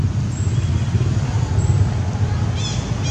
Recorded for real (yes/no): yes